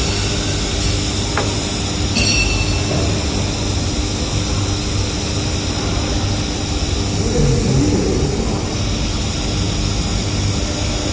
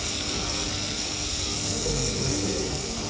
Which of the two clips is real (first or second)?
first